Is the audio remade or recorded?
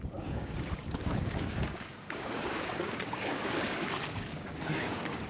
remade